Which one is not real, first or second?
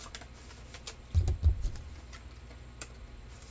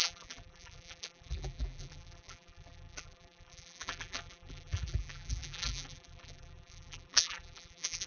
second